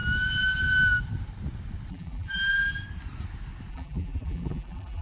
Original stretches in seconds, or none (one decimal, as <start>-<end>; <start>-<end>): 0.0-1.9; 2.6-3.7